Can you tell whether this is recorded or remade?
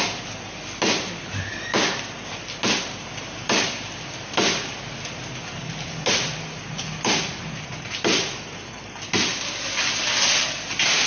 recorded